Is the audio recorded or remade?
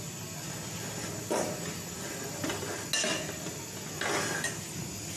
recorded